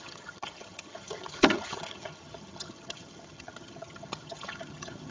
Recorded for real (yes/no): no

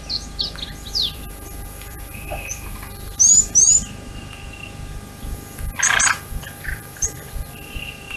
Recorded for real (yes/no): no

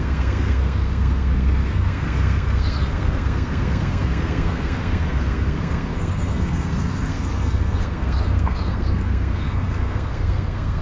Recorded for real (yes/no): no